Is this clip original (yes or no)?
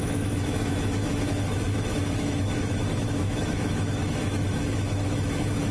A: no